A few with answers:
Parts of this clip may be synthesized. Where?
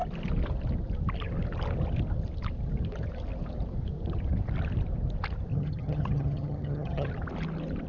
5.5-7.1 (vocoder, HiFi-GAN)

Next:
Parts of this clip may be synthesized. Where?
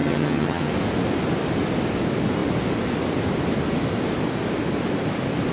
0.0-0.7 (vocoder, HiFi-GAN)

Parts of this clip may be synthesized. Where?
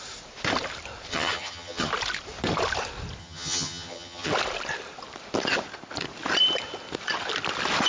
1.1-1.9 (vocoder, HiFi-GAN); 3.2-4.3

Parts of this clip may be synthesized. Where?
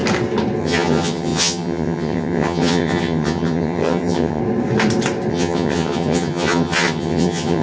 0.6-4.4 (vocoder, HiFi-GAN); 5.3-7.6